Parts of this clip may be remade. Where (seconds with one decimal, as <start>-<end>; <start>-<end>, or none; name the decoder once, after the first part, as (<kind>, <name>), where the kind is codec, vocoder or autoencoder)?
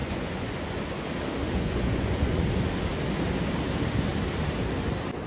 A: 0.0-0.8 (vocoder, Vocos); 1.4-2.5